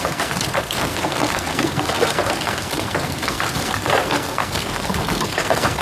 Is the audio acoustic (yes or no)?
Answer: no